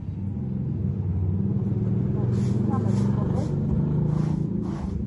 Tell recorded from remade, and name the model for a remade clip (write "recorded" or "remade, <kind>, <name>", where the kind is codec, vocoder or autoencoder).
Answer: recorded